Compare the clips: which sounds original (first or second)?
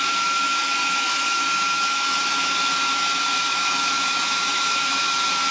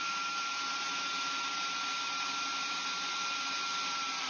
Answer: second